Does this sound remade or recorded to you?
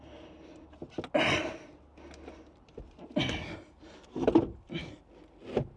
recorded